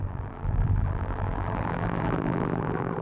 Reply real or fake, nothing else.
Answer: fake